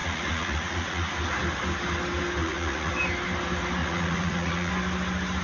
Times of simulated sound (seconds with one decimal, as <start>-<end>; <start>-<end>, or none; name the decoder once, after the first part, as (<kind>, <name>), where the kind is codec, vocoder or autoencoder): 0.0-1.1 (vocoder, Vocos); 2.4-2.9; 3.8-4.7